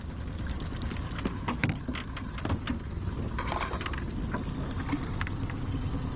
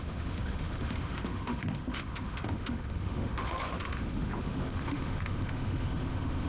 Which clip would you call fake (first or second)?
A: second